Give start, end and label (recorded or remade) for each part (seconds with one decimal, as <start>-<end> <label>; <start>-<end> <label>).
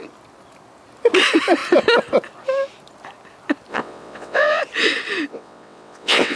0.0-3.7 recorded; 3.7-4.6 remade; 4.6-5.3 recorded; 5.3-6.4 remade